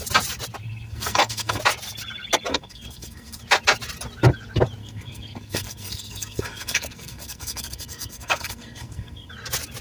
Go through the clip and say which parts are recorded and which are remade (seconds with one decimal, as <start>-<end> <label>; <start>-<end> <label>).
0.0-0.6 recorded; 0.6-1.6 remade; 1.6-2.5 recorded; 2.5-3.4 remade; 3.4-4.8 recorded; 4.8-9.3 remade; 9.3-9.8 recorded